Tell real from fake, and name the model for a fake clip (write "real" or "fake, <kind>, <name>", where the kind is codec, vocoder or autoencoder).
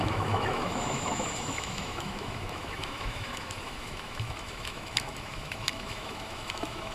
fake, autoencoder, DAC-VAE